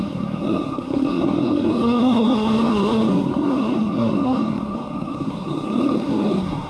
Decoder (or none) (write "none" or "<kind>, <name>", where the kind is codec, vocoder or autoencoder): codec, SNAC